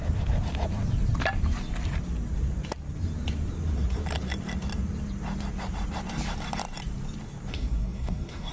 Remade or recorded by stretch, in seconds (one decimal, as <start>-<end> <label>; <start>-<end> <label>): 0.0-7.5 recorded; 7.5-8.5 remade